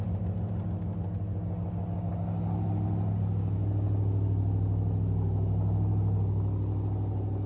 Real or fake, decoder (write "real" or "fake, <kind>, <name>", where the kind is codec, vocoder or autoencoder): real